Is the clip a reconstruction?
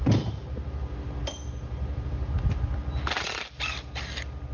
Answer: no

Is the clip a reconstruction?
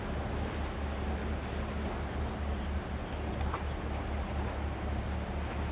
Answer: no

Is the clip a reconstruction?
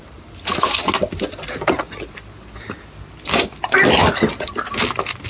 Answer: no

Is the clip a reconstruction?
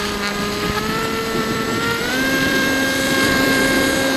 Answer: yes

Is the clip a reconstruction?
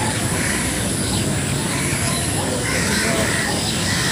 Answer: yes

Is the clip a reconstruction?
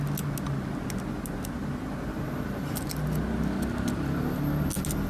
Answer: no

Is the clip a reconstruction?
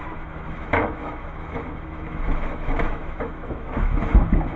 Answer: yes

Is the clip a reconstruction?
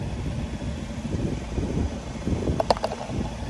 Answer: no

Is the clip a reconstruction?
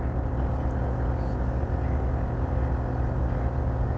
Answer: no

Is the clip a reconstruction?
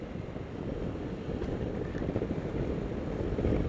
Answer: no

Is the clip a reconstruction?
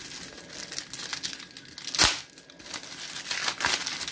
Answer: no